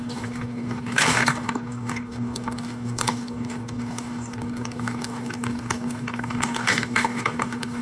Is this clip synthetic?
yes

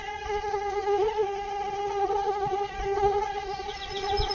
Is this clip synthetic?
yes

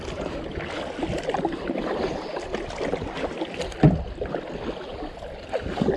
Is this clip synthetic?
no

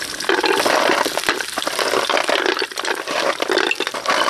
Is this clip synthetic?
no